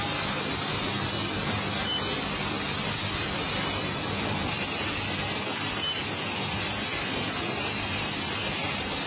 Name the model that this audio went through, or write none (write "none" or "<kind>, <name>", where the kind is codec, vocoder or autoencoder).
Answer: none